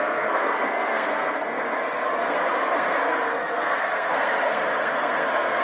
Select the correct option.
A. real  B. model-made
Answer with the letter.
B